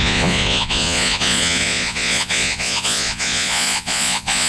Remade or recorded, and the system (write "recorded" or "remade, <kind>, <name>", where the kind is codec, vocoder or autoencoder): remade, vocoder, Vocos